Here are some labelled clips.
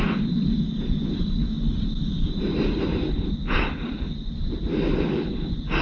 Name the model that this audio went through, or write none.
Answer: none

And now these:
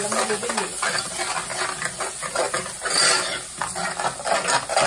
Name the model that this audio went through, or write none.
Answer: none